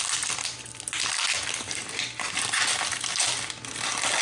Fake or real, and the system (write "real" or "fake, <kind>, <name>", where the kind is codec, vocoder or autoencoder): real